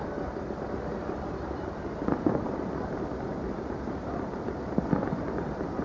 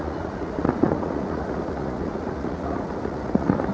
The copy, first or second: second